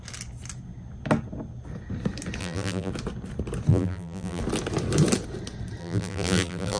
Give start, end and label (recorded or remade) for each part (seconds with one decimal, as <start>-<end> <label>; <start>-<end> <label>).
0.0-2.4 recorded; 2.4-2.9 remade; 2.9-3.7 recorded; 3.7-4.4 remade; 4.4-5.8 recorded; 5.8-6.8 remade